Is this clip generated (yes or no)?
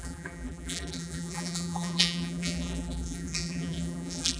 yes